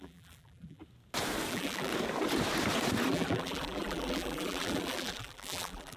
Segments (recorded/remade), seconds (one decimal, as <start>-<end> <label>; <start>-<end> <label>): 0.0-0.8 remade; 0.8-1.5 recorded; 1.5-1.9 remade; 1.9-3.1 recorded; 3.1-6.0 remade